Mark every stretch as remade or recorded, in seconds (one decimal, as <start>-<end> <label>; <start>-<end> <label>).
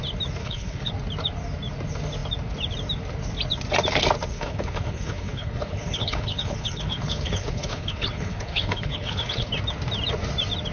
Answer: 0.0-0.4 recorded; 0.4-0.9 remade; 0.9-4.3 recorded; 4.3-9.5 remade; 9.5-10.7 recorded